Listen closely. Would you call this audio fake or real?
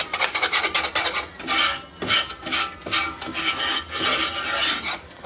real